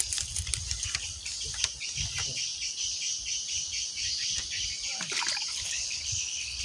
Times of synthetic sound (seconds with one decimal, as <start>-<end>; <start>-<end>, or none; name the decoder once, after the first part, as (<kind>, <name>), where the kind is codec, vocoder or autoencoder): 5.5-6.6 (codec, HILCodec)

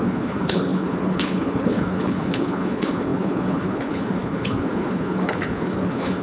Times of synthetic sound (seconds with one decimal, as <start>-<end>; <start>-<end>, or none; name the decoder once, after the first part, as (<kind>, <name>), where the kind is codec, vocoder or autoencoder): 0.0-6.2 (codec, HILCodec)

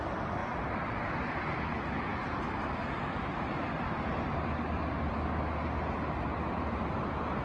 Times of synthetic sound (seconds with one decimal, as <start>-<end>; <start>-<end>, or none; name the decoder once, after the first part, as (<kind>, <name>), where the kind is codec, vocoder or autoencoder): none

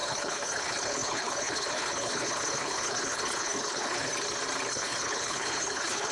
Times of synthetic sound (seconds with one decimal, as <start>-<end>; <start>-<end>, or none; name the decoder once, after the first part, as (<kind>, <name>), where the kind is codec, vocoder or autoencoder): 0.0-4.1 (codec, HILCodec); 4.7-6.1

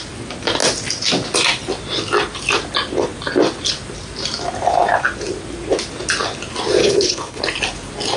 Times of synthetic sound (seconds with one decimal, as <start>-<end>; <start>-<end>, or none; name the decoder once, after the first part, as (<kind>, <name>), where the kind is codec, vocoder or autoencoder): 6.8-7.4 (codec, HILCodec)

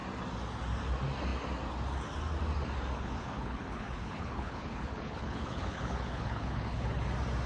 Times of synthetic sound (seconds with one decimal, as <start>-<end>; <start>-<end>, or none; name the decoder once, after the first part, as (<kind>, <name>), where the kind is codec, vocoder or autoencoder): 2.9-7.0 (codec, HILCodec)

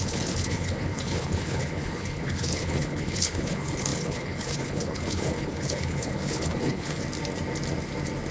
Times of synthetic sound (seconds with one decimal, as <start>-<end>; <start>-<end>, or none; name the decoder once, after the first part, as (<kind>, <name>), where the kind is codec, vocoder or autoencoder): 0.0-7.0 (codec, HILCodec)

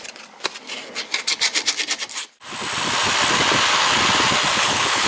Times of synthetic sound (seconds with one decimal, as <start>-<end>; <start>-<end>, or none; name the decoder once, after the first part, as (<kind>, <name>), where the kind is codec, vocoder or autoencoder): 4.5-5.1 (codec, HILCodec)